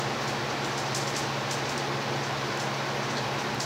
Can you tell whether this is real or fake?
real